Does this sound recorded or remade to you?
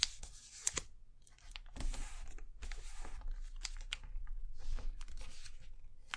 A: recorded